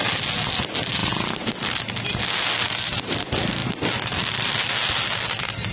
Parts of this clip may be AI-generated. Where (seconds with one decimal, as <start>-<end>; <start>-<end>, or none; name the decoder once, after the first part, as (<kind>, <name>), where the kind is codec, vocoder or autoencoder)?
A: none